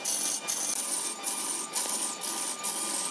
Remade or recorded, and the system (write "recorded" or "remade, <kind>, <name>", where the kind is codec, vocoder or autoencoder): recorded